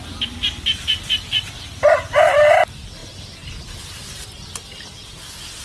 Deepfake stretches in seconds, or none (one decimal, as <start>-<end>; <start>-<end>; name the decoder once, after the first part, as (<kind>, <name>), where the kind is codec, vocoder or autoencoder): none